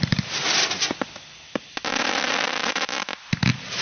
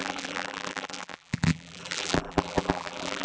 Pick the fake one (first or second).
second